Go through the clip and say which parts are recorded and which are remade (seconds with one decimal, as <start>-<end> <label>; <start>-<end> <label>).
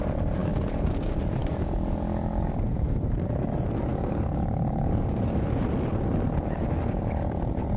0.0-0.4 recorded; 0.4-0.9 remade; 0.9-1.4 recorded; 1.4-3.0 remade; 3.0-3.9 recorded; 3.9-5.4 remade; 5.4-7.8 recorded